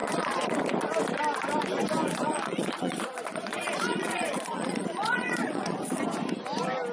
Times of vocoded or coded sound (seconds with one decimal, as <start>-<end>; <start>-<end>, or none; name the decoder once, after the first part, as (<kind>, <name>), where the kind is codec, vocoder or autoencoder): 0.0-0.6 (vocoder, Vocos); 2.0-6.0